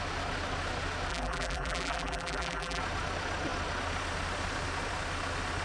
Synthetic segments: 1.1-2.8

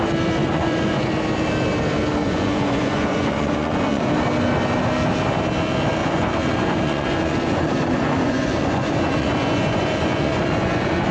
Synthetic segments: 0.4-1.1; 2.2-4.1; 6.0-11.1

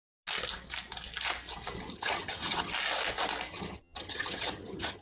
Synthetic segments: 1.9-2.7; 3.5-5.0

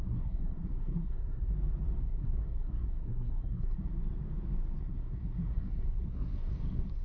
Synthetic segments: 0.0-1.5; 2.0-3.9; 4.8-7.0

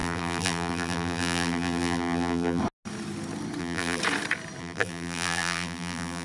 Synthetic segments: 0.0-2.6; 3.6-4.0; 4.6-6.2